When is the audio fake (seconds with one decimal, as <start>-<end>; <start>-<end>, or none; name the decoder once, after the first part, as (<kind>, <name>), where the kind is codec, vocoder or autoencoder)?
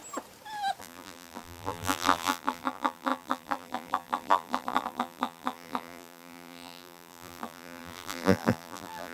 0.8-9.1 (vocoder, BigVGAN v2)